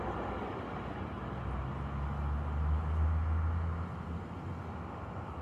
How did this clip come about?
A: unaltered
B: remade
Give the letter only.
A